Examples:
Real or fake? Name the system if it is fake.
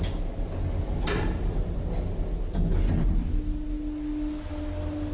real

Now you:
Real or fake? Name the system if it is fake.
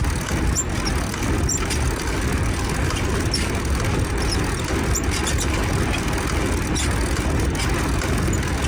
real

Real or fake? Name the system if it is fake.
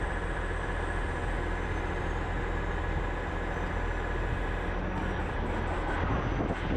real